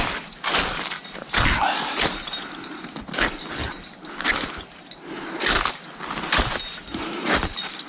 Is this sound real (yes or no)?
yes